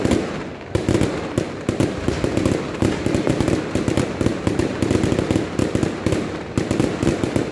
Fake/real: real